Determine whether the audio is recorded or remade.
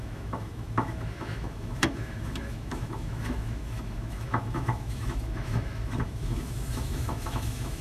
remade